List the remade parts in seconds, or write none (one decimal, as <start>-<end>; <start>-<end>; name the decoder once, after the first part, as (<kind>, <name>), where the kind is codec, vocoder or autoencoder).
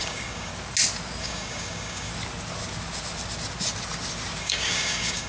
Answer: 0.0-0.5 (codec, DAC); 1.2-2.1; 4.4-5.3